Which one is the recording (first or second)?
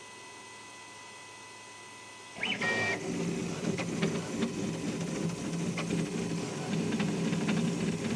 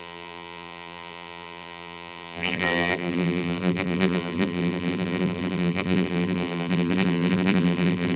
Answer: first